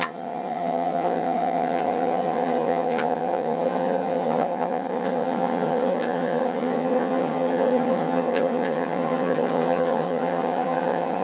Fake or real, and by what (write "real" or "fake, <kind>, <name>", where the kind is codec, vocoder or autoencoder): fake, vocoder, HiFi-GAN